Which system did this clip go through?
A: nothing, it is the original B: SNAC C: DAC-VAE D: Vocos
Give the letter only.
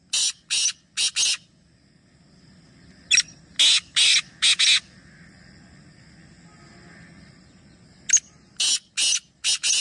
A